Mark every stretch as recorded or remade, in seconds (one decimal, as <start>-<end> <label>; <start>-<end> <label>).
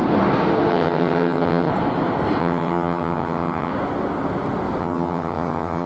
0.0-0.7 recorded; 0.7-1.7 remade; 1.7-2.4 recorded; 2.4-3.7 remade; 3.7-4.8 recorded; 4.8-5.9 remade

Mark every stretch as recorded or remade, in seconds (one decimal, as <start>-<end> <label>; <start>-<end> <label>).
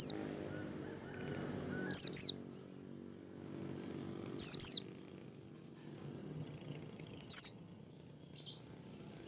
0.0-6.2 recorded; 6.2-7.8 remade; 7.8-9.3 recorded